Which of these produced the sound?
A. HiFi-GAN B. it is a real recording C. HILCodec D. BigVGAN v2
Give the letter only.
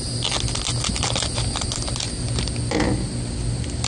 B